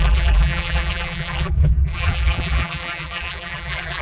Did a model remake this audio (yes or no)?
yes